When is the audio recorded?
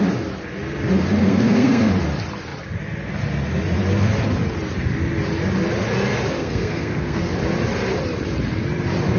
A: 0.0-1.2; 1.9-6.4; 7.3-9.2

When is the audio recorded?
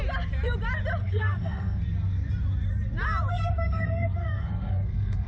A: 0.0-1.0; 1.8-3.3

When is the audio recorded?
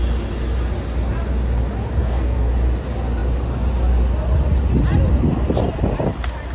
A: 0.0-2.0; 2.5-6.5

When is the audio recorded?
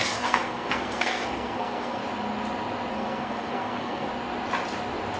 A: 2.0-2.9; 4.1-5.2